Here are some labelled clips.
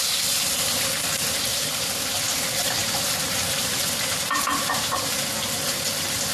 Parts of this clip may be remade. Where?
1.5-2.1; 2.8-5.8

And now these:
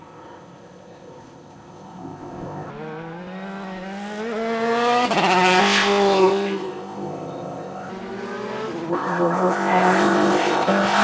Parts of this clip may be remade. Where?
0.0-2.7; 5.6-7.9; 8.9-11.0

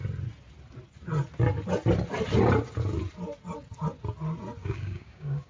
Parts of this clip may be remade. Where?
4.6-5.5

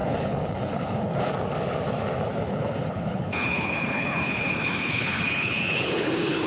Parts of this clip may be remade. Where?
0.0-1.3; 2.5-6.5

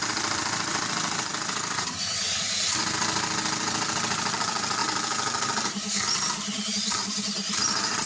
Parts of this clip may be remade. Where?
0.0-1.3; 3.8-4.8; 6.7-8.1

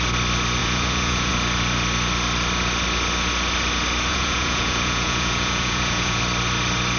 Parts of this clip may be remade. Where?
0.6-1.3; 4.1-6.2

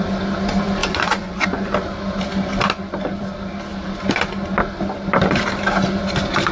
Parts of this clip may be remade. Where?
0.8-1.7